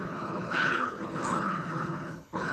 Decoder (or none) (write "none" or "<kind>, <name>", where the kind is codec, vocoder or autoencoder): codec, HILCodec